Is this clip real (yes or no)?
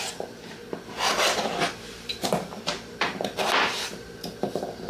no